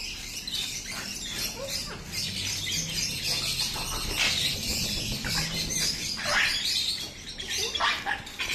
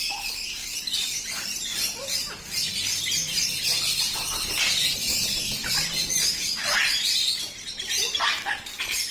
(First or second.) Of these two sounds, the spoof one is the second